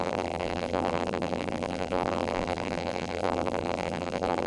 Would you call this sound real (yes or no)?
no